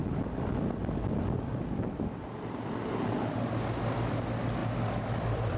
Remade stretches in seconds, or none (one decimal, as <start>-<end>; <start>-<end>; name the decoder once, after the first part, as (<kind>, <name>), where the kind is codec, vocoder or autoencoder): none